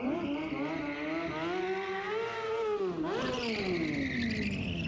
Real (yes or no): yes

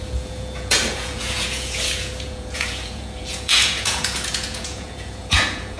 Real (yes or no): no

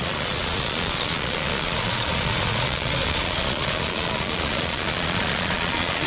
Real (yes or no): no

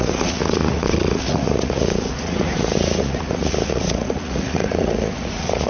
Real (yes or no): no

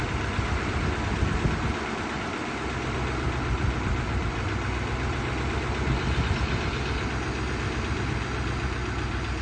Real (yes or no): yes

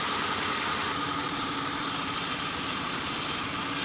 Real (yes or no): yes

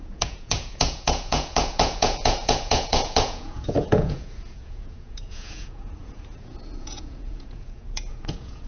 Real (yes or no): no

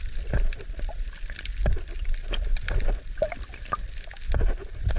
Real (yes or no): yes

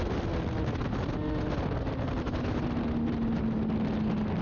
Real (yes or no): yes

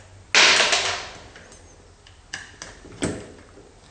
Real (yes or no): yes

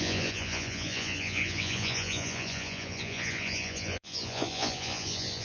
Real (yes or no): no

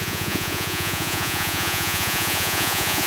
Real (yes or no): no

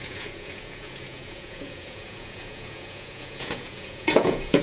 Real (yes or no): no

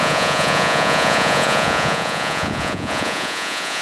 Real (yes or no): no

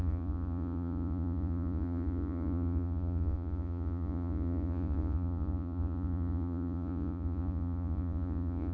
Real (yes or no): no